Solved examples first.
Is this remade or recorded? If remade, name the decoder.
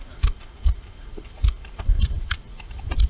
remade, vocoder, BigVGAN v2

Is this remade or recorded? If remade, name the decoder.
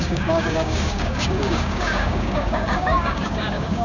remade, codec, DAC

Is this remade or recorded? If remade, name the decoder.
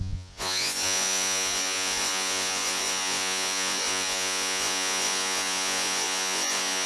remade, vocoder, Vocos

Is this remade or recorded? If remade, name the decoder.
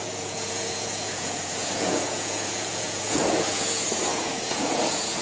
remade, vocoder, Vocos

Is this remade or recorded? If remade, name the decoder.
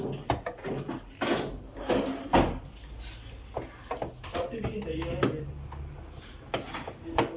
recorded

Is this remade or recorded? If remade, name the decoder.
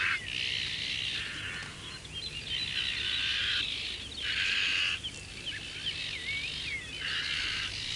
recorded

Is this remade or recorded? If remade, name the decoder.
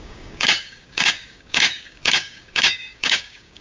remade, codec, DAC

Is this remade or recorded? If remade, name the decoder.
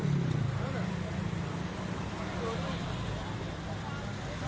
recorded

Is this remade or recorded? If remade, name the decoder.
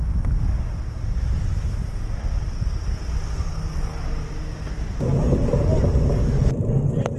recorded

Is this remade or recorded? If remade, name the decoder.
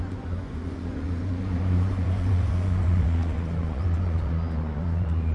remade, vocoder, Vocos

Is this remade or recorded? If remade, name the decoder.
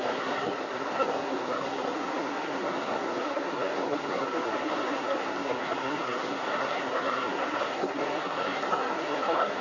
remade, codec, SNAC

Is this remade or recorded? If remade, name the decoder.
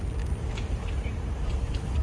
recorded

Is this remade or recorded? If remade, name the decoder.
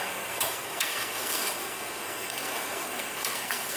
remade, codec, SNAC